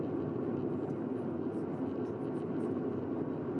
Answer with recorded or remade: recorded